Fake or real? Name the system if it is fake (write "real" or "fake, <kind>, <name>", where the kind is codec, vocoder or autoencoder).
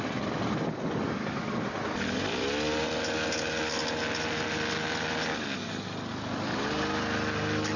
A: real